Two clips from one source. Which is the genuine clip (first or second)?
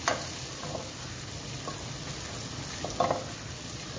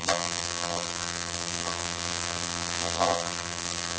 first